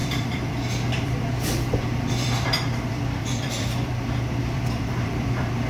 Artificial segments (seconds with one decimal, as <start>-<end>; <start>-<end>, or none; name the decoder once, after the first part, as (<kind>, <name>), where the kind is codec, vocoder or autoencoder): 0.0-5.7 (vocoder, BigVGAN v2)